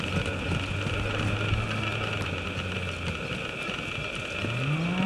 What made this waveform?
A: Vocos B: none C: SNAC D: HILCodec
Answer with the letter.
B